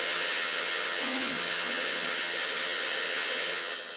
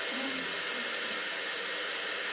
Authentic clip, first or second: second